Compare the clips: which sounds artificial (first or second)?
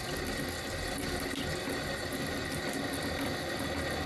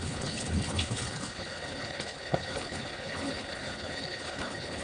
second